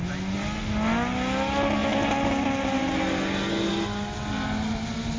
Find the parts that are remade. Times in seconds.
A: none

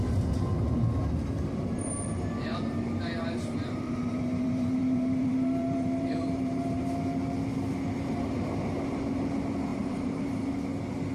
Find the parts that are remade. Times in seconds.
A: 2.5-6.9 (vocoder, BigVGAN v2); 9.7-10.5

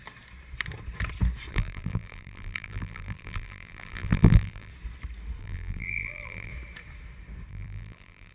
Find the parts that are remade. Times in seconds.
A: 1.5-4.7 (vocoder, BigVGAN v2); 5.4-6.5; 7.5-8.3

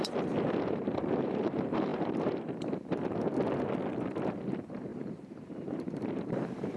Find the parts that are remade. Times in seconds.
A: 0.0-3.3 (vocoder, BigVGAN v2); 4.0-6.8

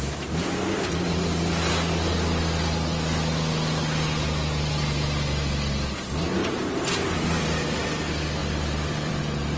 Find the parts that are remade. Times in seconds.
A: 8.4-9.2 (vocoder, BigVGAN v2)

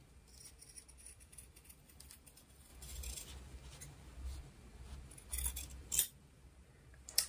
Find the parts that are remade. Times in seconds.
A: 0.0-2.7 (vocoder, BigVGAN v2); 6.0-7.3

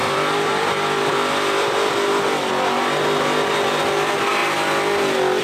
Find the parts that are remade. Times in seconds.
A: 0.0-2.5 (vocoder, BigVGAN v2)